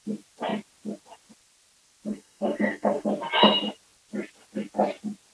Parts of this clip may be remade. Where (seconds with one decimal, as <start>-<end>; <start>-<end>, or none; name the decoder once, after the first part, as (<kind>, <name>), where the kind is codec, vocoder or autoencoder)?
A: 2.1-3.1 (codec, SNAC)

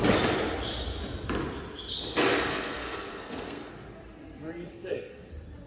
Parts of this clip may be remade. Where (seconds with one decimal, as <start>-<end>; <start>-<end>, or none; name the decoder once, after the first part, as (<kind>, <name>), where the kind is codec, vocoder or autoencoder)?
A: 2.5-3.7 (codec, SNAC); 4.7-5.3

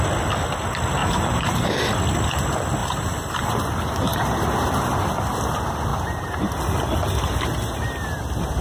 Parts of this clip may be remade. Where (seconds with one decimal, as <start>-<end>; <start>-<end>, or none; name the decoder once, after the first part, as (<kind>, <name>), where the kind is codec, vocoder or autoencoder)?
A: 1.0-1.6 (vocoder, BigVGAN v2); 2.8-3.5; 5.9-6.5

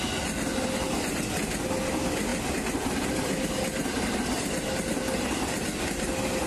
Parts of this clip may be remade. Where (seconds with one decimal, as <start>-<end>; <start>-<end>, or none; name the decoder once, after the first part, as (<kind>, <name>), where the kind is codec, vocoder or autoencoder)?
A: none

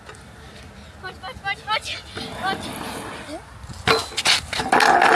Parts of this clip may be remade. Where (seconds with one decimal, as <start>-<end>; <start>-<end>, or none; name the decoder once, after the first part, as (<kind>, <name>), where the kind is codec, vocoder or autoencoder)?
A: none